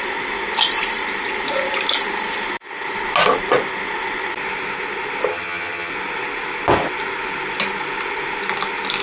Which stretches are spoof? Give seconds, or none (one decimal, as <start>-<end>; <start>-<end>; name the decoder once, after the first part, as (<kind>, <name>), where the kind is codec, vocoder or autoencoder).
5.3-5.9 (vocoder, HiFi-GAN)